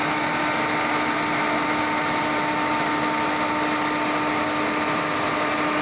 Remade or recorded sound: recorded